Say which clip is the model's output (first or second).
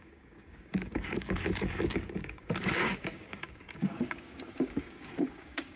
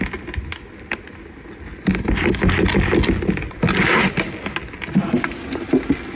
first